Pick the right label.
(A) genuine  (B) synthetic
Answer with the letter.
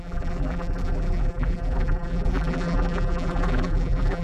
B